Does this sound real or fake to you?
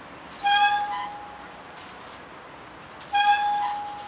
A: real